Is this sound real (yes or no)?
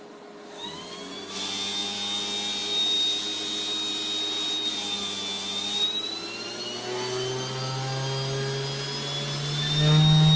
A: yes